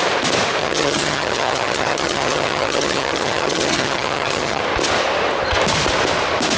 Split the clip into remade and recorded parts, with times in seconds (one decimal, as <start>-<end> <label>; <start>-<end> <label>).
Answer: 0.0-0.6 recorded; 0.6-4.6 remade; 4.6-6.6 recorded